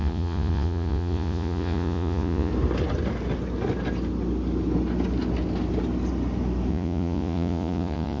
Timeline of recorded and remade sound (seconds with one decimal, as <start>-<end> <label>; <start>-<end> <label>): 0.0-2.5 remade; 2.5-6.7 recorded; 6.7-8.2 remade